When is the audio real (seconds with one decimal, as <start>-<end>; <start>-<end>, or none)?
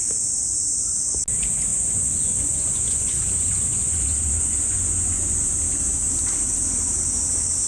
0.0-1.7; 5.6-7.7